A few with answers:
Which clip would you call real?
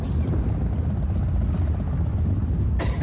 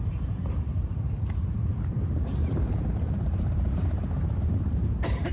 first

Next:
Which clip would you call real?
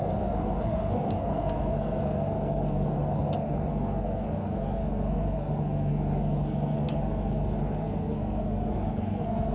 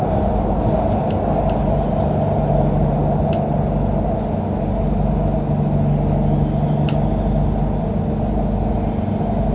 second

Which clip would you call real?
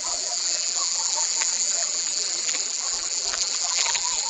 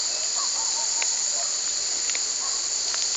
second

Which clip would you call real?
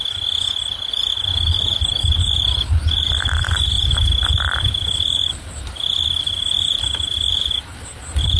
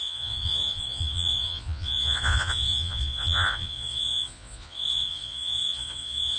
first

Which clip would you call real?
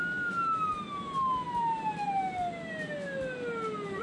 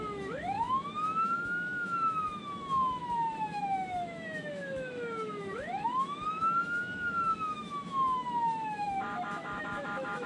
first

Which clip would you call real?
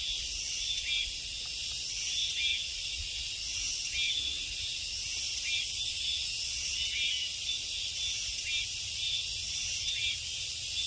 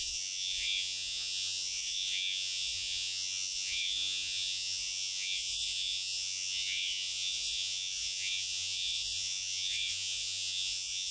first